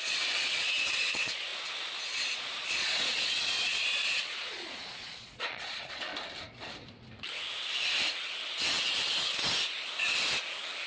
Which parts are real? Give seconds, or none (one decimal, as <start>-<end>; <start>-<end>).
1.5-2.0; 6.1-10.9